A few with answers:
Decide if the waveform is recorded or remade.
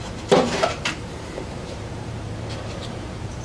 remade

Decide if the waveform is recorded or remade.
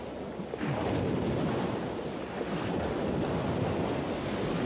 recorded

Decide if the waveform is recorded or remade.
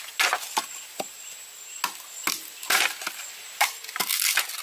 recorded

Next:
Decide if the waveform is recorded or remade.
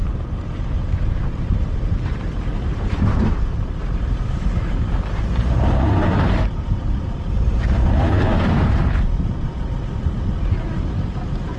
remade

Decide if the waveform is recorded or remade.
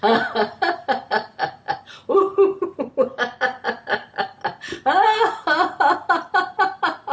recorded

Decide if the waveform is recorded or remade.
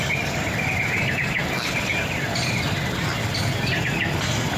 recorded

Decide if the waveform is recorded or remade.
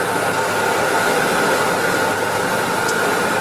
recorded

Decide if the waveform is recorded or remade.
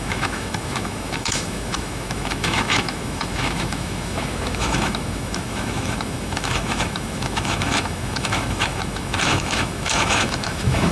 remade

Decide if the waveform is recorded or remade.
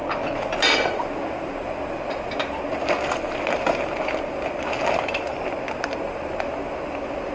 recorded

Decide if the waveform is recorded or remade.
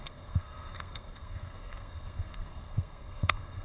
remade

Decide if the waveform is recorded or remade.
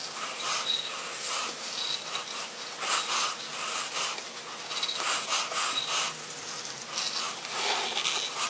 recorded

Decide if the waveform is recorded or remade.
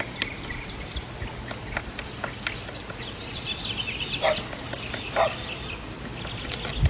recorded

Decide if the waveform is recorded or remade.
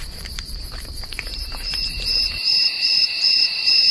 remade